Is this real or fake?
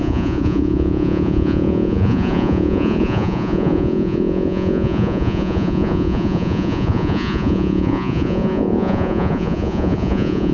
fake